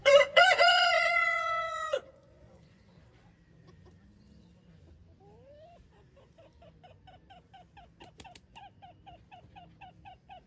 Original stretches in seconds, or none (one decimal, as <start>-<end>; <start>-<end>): 2.9-10.5